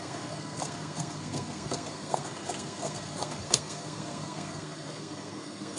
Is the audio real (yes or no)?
no